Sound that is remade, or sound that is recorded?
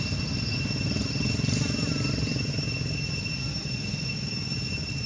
recorded